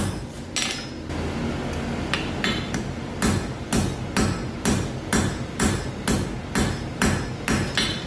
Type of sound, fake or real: real